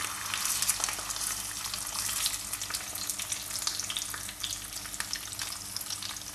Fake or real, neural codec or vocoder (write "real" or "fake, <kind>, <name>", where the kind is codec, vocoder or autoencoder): real